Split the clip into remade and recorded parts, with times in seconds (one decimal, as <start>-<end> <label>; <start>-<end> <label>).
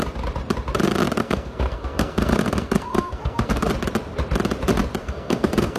0.0-1.2 recorded; 1.2-3.7 remade; 3.7-5.0 recorded; 5.0-5.8 remade